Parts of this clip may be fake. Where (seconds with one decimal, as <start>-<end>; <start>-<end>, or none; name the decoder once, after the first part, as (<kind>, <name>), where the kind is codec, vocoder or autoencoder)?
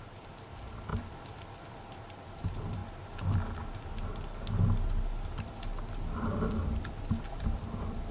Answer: 0.0-2.8 (vocoder, BigVGAN v2); 7.1-8.1